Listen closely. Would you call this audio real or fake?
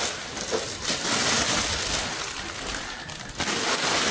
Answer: real